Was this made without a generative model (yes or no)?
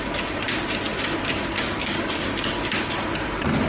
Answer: yes